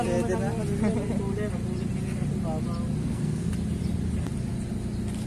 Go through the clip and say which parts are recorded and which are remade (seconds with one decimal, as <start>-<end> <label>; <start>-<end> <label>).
0.0-3.0 recorded; 3.0-3.5 remade; 3.5-5.3 recorded